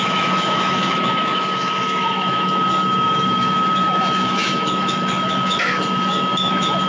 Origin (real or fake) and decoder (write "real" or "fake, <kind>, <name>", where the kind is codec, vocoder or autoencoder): fake, autoencoder, DAC-VAE